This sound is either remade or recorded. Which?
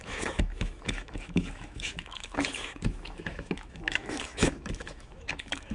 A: remade